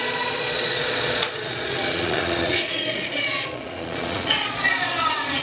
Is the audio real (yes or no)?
no